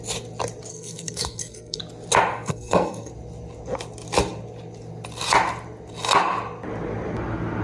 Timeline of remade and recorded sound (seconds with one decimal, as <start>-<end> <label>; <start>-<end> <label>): 0.0-0.7 recorded; 0.7-1.8 remade; 1.8-2.3 recorded; 2.3-3.1 remade; 3.1-7.6 recorded